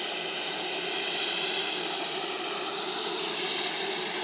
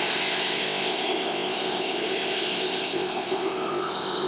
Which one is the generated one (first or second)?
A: second